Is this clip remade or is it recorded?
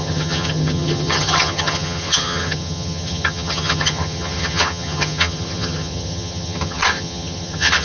remade